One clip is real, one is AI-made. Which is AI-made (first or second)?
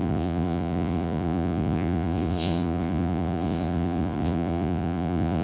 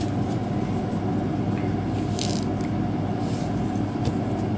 first